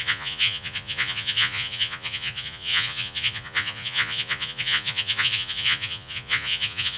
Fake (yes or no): yes